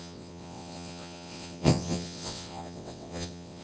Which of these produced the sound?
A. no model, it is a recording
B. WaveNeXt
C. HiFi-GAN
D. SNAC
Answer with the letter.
B